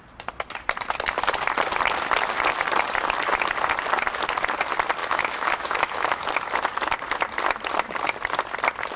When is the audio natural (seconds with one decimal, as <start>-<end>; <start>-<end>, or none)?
0.0-5.0; 6.3-9.0

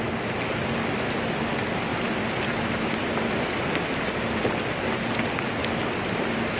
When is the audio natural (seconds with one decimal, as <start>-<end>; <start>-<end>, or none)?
0.0-1.9; 4.6-6.6

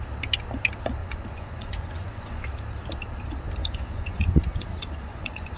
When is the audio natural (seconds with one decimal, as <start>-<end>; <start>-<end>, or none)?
0.0-1.0; 2.4-3.6

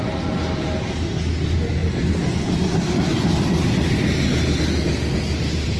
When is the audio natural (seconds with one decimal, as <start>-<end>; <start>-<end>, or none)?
0.0-5.8

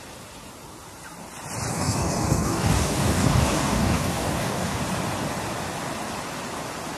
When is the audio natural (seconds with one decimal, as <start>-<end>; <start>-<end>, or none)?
0.0-1.7; 4.8-7.0